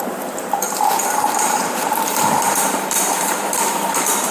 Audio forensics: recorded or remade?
remade